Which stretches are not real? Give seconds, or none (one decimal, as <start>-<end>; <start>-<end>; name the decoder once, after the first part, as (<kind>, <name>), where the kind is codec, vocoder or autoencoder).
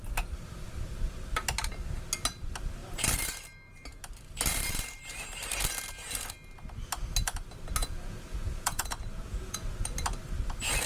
7.8-9.8 (vocoder, Vocos)